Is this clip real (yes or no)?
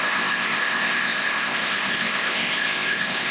no